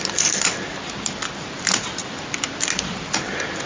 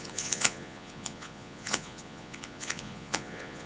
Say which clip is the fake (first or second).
second